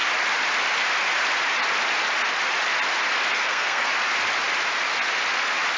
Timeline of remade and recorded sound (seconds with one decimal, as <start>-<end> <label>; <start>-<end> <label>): 0.0-3.3 recorded; 3.3-3.9 remade; 3.9-5.8 recorded